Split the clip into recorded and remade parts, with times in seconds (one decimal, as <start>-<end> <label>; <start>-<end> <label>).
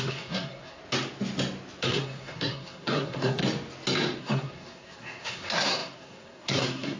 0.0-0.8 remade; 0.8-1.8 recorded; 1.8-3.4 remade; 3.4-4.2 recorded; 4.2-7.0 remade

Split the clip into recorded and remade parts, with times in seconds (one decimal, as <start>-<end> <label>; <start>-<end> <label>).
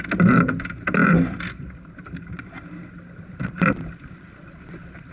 0.0-5.1 recorded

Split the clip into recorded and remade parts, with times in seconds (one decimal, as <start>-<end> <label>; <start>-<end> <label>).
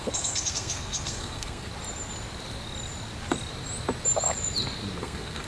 0.0-1.7 remade; 1.7-5.0 recorded; 5.0-5.5 remade